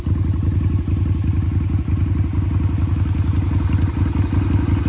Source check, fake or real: real